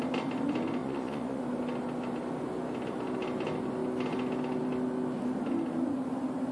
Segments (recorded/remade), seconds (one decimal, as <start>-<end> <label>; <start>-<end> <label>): 0.0-0.8 recorded; 0.8-1.4 remade; 1.4-6.5 recorded